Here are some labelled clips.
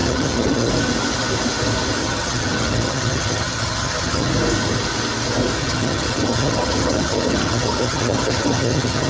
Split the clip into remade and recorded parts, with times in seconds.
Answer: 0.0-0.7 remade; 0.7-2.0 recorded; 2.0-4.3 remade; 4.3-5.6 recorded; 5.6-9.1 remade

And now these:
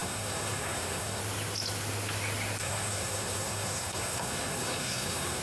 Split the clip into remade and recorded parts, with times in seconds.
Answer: 0.0-1.2 remade; 1.2-2.6 recorded; 2.6-5.4 remade

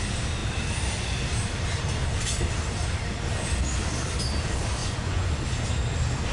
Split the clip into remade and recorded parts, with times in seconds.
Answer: 0.0-4.8 recorded; 4.8-5.3 remade; 5.3-6.3 recorded

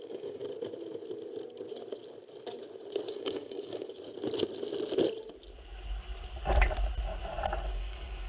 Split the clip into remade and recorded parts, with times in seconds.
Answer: 0.0-0.4 remade; 0.4-3.1 recorded; 3.1-3.9 remade; 3.9-7.7 recorded; 7.7-8.3 remade

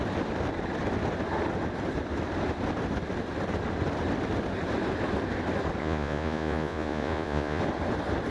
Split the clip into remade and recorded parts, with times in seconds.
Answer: 0.0-5.8 recorded; 5.8-7.6 remade; 7.6-8.3 recorded